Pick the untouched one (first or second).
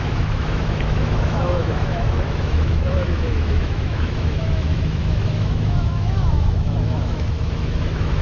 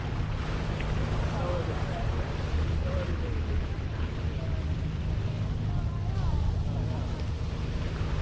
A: second